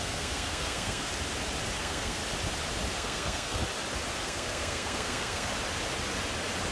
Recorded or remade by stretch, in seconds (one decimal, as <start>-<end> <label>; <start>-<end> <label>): 0.0-1.1 remade; 1.1-1.8 recorded; 1.8-2.2 remade; 2.2-2.9 recorded; 2.9-3.6 remade; 3.6-4.2 recorded; 4.2-5.5 remade; 5.5-6.7 recorded